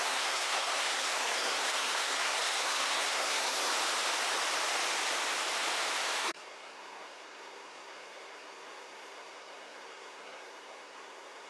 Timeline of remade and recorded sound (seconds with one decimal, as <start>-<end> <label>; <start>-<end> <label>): 0.0-3.7 remade; 3.7-6.2 recorded; 6.2-11.5 remade